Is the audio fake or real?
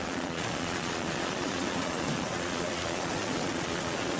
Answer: fake